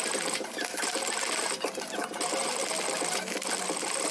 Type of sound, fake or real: real